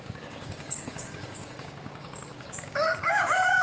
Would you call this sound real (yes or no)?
no